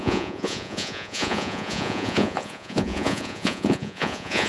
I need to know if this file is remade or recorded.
remade